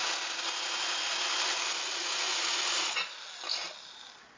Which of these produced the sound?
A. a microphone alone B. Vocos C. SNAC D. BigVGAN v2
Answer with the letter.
A